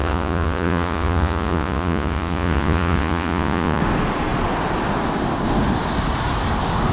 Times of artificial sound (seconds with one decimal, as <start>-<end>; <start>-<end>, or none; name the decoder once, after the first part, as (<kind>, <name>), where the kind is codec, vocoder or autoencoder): 0.0-3.8 (vocoder, Vocos)